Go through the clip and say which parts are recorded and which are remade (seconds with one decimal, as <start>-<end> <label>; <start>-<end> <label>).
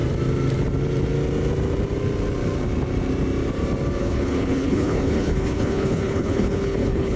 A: 0.0-4.0 recorded; 4.0-7.2 remade